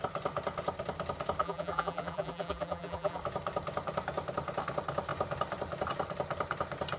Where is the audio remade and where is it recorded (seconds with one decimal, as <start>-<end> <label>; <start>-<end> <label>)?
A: 0.0-1.4 recorded; 1.4-3.2 remade; 3.2-7.0 recorded